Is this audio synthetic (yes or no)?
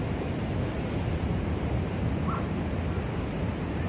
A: no